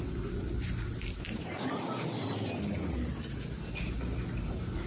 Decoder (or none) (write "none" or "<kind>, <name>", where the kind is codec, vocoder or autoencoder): none